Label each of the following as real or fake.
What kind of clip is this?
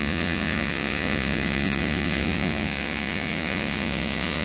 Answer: fake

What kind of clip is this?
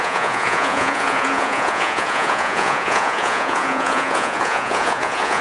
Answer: fake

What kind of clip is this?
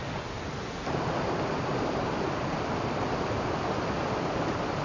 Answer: real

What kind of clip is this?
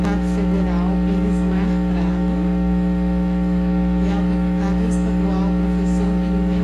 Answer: fake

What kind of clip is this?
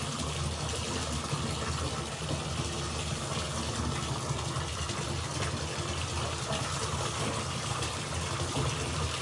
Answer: real